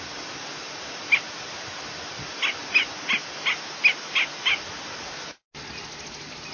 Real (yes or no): yes